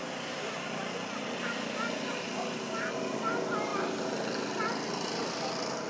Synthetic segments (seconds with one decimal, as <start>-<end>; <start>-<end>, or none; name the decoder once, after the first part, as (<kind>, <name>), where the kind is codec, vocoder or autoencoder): none

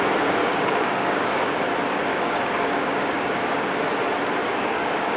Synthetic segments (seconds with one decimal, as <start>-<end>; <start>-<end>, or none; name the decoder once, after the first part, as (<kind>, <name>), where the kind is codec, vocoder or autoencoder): 0.4-1.5 (codec, DAC); 2.1-3.4; 4.4-5.2